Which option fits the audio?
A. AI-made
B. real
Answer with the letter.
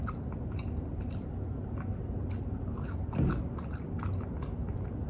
B